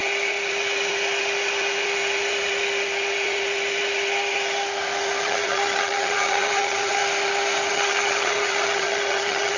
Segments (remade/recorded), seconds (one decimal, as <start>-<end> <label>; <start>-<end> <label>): 0.0-5.2 recorded; 5.2-7.0 remade; 7.0-7.7 recorded; 7.7-9.6 remade